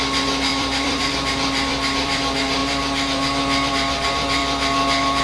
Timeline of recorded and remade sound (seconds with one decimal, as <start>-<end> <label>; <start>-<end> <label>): 0.0-0.5 recorded; 0.5-1.1 remade; 1.1-1.7 recorded; 1.7-2.2 remade; 2.2-5.2 recorded